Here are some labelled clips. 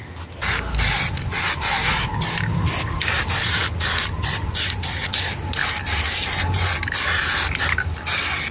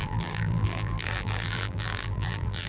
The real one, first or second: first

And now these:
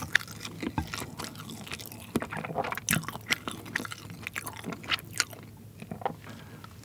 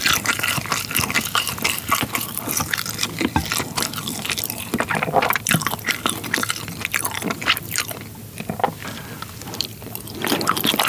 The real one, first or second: first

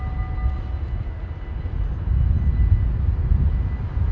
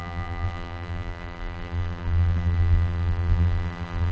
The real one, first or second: first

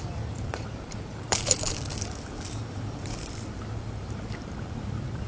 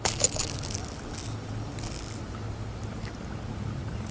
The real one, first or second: second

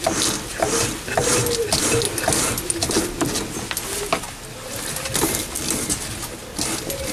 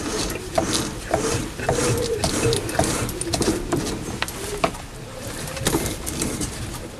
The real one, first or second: first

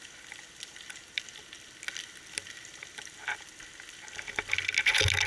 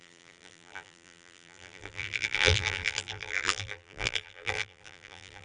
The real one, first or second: first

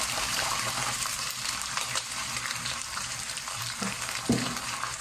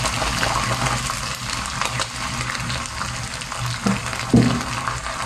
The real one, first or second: second